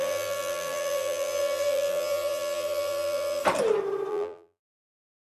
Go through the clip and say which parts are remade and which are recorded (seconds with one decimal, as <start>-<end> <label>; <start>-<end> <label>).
0.0-3.4 remade; 3.4-4.1 recorded; 4.1-5.2 remade